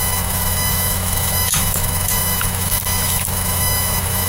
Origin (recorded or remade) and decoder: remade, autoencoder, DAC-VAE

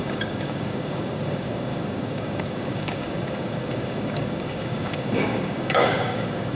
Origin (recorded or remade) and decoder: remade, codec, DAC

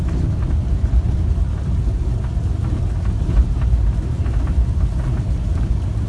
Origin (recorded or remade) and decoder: recorded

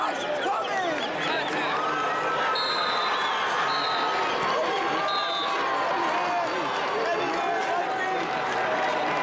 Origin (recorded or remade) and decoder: recorded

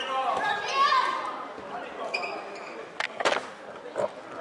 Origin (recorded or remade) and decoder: recorded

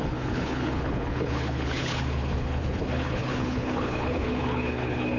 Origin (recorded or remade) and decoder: remade, codec, HILCodec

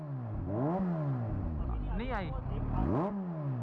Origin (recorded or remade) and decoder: recorded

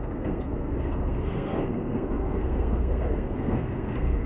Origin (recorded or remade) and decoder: remade, codec, SNAC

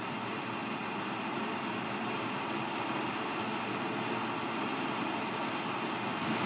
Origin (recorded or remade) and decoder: recorded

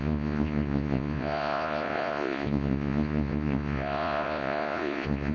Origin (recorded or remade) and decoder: remade, vocoder, Vocos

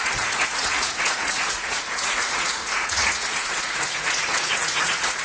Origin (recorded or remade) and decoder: remade, vocoder, Vocos